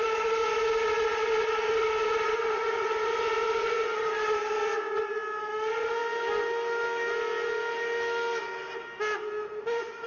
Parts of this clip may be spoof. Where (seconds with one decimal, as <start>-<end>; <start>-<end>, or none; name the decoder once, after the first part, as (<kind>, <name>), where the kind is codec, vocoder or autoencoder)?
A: 0.0-0.4 (vocoder, Vocos); 1.1-4.6; 5.4-6.0; 9.6-10.1